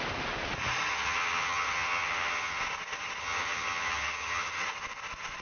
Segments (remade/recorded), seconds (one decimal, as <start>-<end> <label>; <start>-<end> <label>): 0.0-0.9 recorded; 0.9-2.6 remade; 2.6-3.2 recorded; 3.2-4.6 remade; 4.6-5.4 recorded

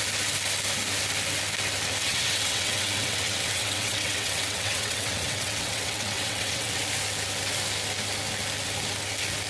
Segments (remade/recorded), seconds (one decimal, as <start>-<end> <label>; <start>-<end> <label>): 0.0-2.0 recorded; 2.0-6.8 remade; 6.8-9.5 recorded